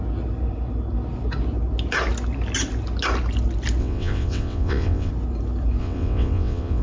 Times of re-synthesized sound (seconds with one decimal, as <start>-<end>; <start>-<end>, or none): 3.8-5.1; 5.8-6.8

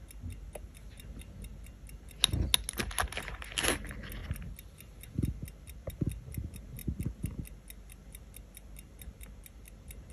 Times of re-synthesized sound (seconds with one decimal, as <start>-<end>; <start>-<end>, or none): none